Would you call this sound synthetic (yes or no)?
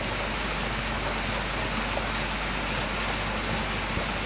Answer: no